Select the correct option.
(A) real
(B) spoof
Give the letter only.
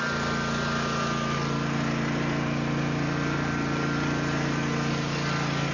A